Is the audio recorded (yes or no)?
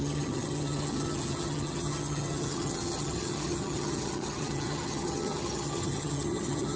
no